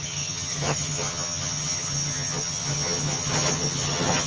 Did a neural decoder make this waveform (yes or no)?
yes